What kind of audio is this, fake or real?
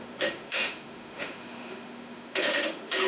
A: fake